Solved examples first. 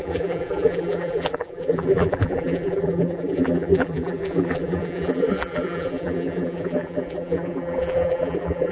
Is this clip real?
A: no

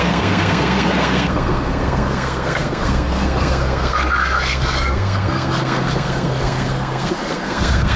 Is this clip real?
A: no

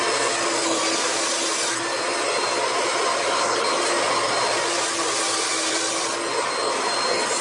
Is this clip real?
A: yes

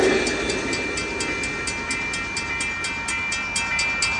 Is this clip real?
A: yes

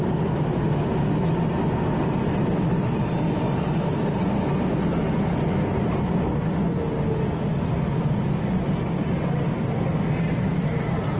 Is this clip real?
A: yes